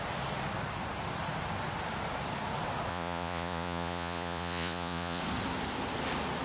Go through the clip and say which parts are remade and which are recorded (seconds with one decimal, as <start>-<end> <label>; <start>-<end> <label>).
0.0-2.9 recorded; 2.9-5.2 remade; 5.2-6.4 recorded